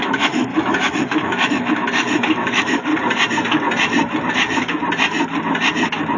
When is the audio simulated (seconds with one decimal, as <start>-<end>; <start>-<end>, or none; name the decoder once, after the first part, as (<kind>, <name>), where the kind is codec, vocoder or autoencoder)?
0.0-2.9 (autoencoder, DAC-VAE); 4.3-4.8